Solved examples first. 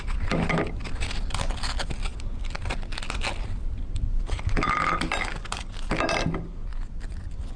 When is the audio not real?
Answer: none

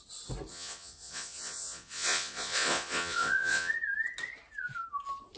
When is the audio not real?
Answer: 0.5-3.7 (vocoder, Vocos)

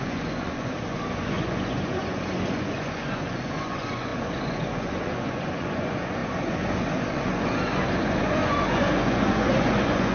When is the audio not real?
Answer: 0.0-10.1 (vocoder, Vocos)

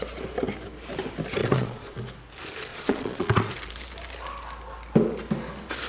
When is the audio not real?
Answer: 1.4-2.0 (vocoder, Vocos); 2.7-3.5

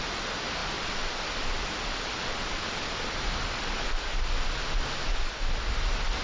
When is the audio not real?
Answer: none

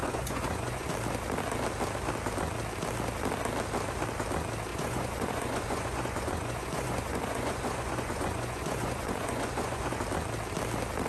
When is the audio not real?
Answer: 0.0-0.9 (vocoder, Vocos); 4.7-10.0

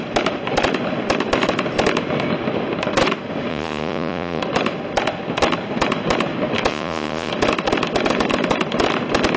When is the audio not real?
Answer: 3.5-4.4 (vocoder, Vocos); 6.7-7.3

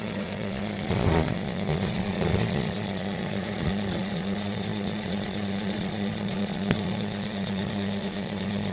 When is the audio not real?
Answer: 0.0-8.7 (vocoder, Vocos)